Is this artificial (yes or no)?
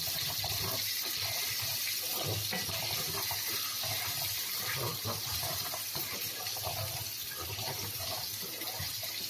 no